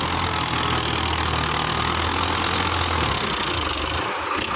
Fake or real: real